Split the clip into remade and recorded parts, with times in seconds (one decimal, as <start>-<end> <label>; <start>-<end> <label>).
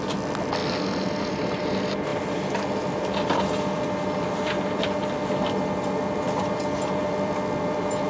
0.0-0.6 remade; 0.6-1.2 recorded; 1.2-8.1 remade